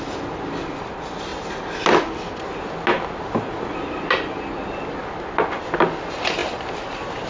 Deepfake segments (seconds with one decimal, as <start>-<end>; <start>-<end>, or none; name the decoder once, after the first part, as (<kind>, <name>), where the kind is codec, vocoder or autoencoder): none